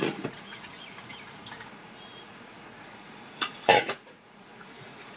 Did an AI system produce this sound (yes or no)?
yes